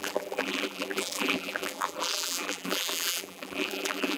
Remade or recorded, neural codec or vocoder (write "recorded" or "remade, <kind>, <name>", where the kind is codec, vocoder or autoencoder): remade, vocoder, BigVGAN v2